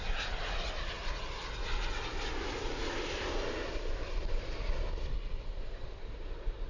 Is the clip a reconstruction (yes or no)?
no